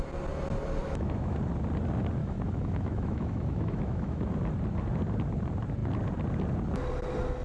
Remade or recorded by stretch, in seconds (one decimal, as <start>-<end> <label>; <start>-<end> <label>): 0.0-0.8 recorded; 0.8-1.4 remade; 1.4-2.2 recorded; 2.2-4.2 remade; 4.2-7.4 recorded

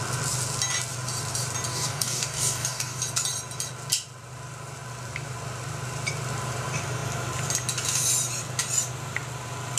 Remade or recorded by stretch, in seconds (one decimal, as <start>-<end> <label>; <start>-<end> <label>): 0.0-1.7 recorded; 1.7-3.0 remade; 3.0-9.8 recorded

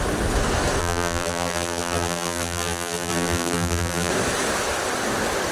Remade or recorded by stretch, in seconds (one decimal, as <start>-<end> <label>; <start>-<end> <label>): 0.0-0.8 recorded; 0.8-4.1 remade; 4.1-5.5 recorded

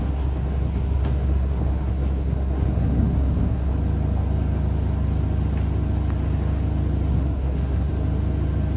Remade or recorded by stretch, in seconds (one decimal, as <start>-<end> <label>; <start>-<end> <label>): 0.0-3.7 remade; 3.7-7.1 recorded; 7.1-7.9 remade; 7.9-8.8 recorded

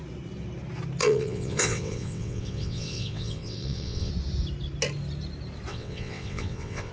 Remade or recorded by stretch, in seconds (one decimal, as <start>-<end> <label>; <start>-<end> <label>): 0.0-1.0 recorded; 1.0-4.1 remade; 4.1-5.7 recorded; 5.7-6.9 remade

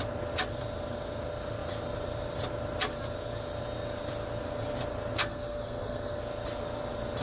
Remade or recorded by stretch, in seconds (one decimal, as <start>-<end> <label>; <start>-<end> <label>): 0.0-5.2 recorded; 5.2-6.2 remade; 6.2-7.2 recorded

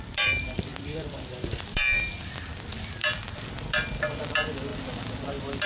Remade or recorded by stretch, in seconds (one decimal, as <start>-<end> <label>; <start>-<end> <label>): 0.0-5.7 remade

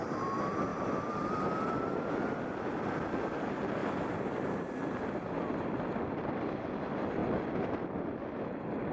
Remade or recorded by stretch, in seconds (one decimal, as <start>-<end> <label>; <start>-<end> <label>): 0.0-8.9 recorded